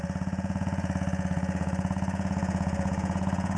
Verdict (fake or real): fake